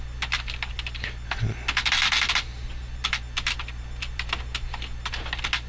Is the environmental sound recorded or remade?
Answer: recorded